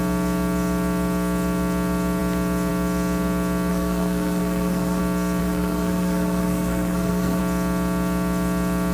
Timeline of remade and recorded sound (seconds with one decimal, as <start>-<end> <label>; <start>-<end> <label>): 0.0-3.7 recorded; 3.7-5.0 remade; 5.0-5.4 recorded; 5.4-7.4 remade; 7.4-8.9 recorded